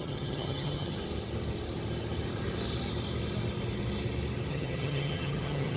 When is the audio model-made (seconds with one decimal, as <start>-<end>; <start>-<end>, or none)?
0.0-1.0; 4.5-5.8